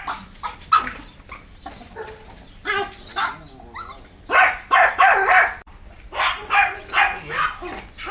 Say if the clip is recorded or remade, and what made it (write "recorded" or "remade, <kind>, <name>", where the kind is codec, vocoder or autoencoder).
recorded